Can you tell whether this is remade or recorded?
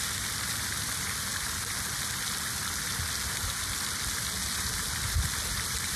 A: recorded